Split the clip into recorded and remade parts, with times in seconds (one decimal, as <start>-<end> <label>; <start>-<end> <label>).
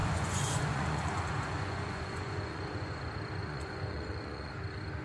0.0-3.0 remade; 3.0-3.4 recorded; 3.4-4.5 remade; 4.5-5.0 recorded